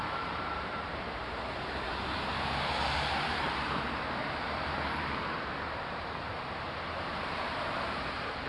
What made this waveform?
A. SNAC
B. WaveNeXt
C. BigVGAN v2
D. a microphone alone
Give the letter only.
C